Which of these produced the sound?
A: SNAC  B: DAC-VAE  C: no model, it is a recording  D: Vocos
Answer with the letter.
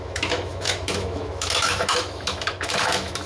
B